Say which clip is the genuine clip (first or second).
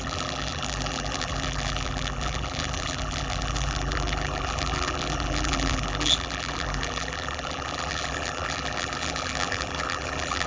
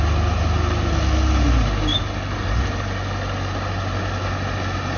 second